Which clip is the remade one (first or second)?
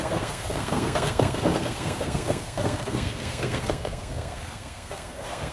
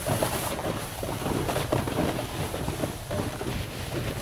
first